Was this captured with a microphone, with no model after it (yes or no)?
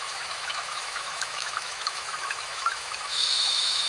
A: no